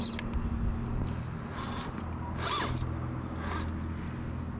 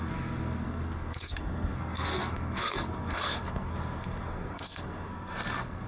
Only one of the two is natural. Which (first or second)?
first